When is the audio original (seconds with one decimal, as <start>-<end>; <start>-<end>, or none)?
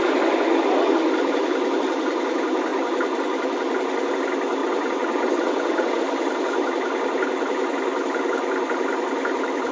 0.0-4.6; 6.0-9.7